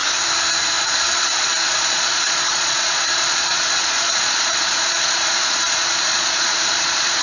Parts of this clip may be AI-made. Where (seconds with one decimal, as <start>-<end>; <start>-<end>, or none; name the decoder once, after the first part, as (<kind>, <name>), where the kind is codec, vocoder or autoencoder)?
0.8-7.2 (vocoder, Vocos)